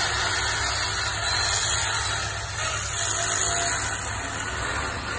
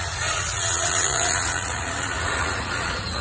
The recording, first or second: first